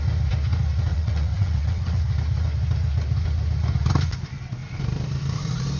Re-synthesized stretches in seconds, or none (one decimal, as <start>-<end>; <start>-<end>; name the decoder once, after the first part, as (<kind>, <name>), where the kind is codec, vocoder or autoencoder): 0.9-2.0 (vocoder, WaveNeXt)